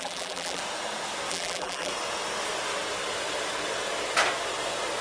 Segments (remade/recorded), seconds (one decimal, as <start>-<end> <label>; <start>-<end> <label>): 0.0-0.6 remade; 0.6-1.3 recorded; 1.3-1.9 remade; 1.9-5.0 recorded